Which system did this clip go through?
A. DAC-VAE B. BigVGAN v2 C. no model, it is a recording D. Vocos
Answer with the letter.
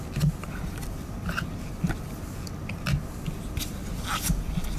C